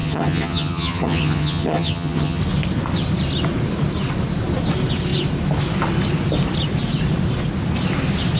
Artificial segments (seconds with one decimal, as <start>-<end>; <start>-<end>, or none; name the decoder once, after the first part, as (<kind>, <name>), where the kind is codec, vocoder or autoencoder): 0.0-2.4 (vocoder, HiFi-GAN)